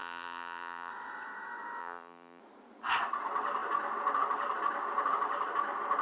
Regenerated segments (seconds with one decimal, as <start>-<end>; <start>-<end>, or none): 0.0-0.9; 1.8-2.4